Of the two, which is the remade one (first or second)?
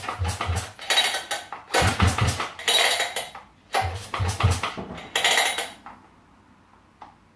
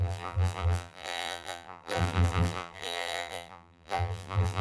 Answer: second